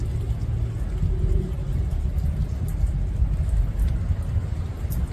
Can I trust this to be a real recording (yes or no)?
yes